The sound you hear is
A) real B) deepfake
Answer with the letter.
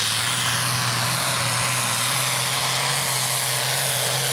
A